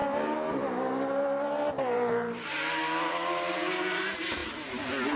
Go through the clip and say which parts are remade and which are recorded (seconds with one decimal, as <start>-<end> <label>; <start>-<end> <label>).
0.0-4.4 remade; 4.4-5.2 recorded